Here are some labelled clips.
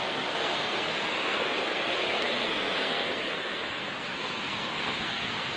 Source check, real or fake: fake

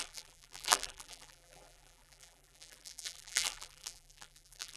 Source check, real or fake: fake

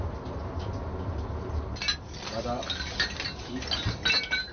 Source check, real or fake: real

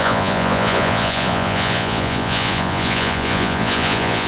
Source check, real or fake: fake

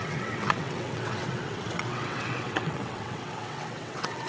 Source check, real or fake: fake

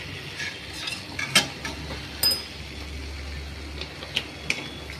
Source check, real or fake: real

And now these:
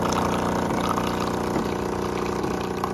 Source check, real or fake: real